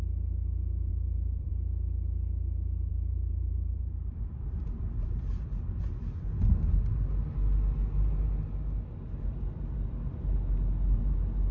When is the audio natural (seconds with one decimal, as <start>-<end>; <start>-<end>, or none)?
0.0-0.9; 1.5-2.9; 5.7-11.5